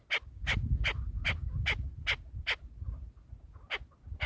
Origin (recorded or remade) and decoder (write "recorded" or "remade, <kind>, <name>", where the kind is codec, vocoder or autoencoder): recorded